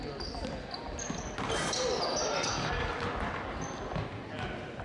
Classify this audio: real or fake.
real